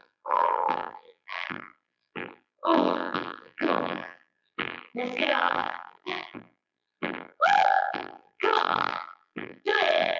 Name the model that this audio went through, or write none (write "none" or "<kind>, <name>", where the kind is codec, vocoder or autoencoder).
vocoder, BigVGAN v2